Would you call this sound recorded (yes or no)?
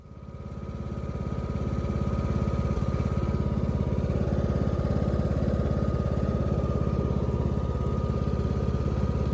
yes